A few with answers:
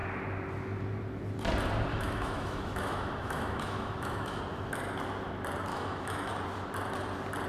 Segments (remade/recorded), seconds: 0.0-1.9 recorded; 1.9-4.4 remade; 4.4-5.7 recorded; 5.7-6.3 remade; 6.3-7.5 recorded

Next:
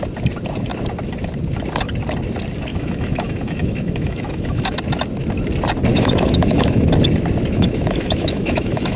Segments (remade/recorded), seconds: 0.0-2.7 recorded; 2.7-4.8 remade; 4.8-5.9 recorded; 5.9-6.9 remade; 6.9-7.5 recorded; 7.5-9.0 remade

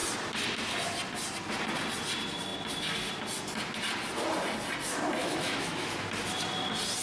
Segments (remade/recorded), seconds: 0.0-5.2 recorded; 5.2-5.9 remade; 5.9-7.0 recorded

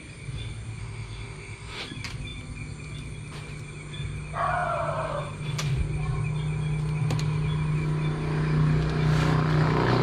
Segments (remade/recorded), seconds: 0.0-0.8 recorded; 0.8-1.8 remade; 1.8-10.0 recorded

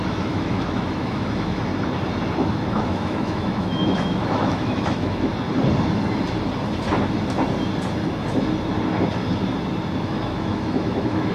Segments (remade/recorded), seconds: 0.0-1.7 remade; 1.7-2.7 recorded; 2.7-5.3 remade; 5.3-10.0 recorded; 10.0-11.3 remade

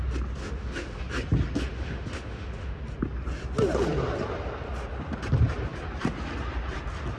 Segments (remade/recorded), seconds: 0.0-0.4 recorded; 0.4-1.0 remade; 1.0-1.7 recorded; 1.7-2.8 remade; 2.8-7.2 recorded

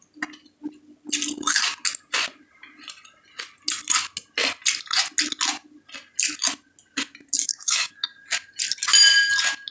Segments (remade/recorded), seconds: 0.0-7.4 recorded; 7.4-7.9 remade; 7.9-9.7 recorded